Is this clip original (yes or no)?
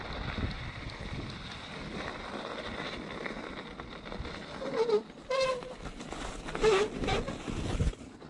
yes